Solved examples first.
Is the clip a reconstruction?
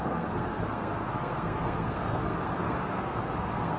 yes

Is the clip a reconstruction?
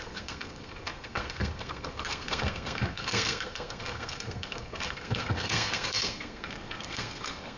yes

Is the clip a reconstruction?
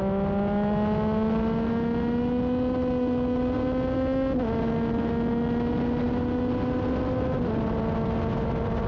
no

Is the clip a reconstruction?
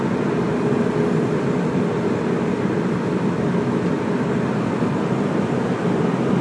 no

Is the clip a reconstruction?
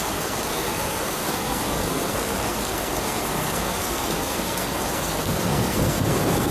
yes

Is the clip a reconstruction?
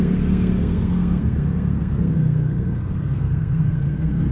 yes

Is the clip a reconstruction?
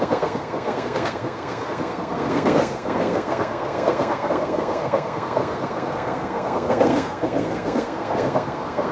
yes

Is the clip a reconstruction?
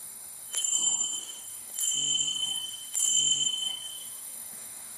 yes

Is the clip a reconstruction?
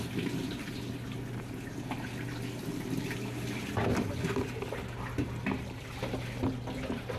no